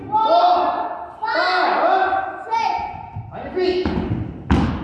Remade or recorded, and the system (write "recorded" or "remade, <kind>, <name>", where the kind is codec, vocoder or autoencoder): recorded